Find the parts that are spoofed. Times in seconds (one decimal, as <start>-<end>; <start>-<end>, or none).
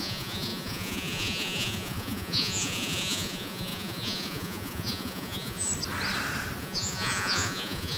0.0-5.7; 6.6-8.0